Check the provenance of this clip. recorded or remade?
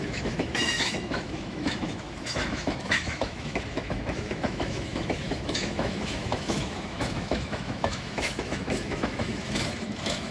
remade